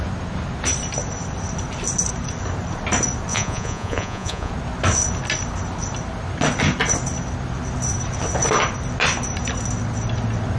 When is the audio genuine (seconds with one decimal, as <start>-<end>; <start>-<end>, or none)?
0.0-3.3; 4.5-10.6